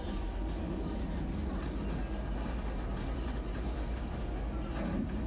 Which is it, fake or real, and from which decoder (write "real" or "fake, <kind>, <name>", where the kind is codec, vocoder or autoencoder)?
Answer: real